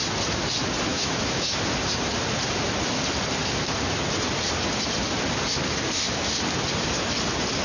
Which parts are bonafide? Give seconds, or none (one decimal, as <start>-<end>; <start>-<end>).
0.0-0.9; 1.6-7.6